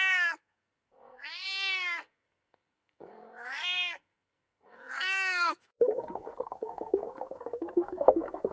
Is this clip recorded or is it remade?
remade